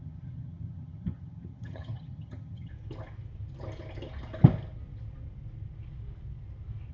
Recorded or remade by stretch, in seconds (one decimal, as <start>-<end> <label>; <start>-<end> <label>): 0.0-2.7 remade; 2.7-6.9 recorded